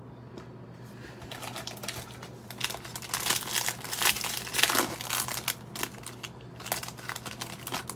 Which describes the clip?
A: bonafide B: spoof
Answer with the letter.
A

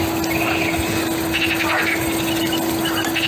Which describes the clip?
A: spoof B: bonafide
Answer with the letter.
B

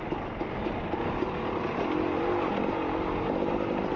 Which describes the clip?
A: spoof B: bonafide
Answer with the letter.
B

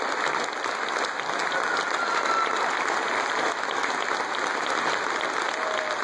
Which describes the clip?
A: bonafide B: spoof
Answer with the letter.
A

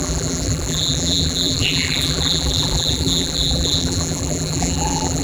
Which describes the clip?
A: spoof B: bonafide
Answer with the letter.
A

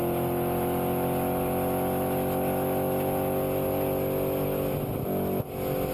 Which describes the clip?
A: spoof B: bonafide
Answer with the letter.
B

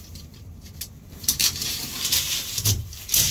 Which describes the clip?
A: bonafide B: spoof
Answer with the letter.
B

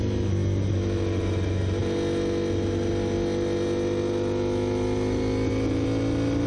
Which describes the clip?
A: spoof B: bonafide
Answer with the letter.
B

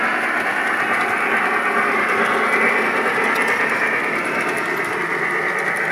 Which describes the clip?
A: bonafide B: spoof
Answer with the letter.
A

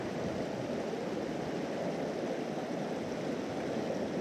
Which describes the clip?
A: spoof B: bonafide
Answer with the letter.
B